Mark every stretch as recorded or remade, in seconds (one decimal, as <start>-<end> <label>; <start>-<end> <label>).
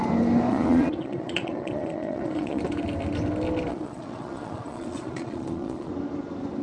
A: 0.0-0.5 recorded; 0.5-2.6 remade; 2.6-3.7 recorded; 3.7-5.9 remade; 5.9-6.6 recorded